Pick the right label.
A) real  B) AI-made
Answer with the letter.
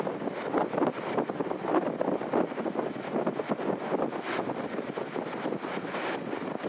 A